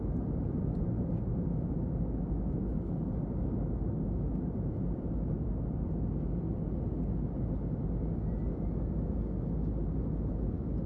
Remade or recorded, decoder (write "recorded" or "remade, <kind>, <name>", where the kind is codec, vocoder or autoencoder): recorded